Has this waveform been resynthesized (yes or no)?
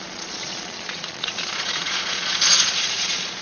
yes